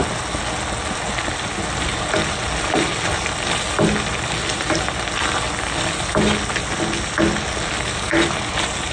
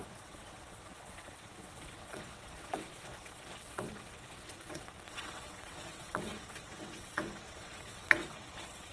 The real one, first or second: first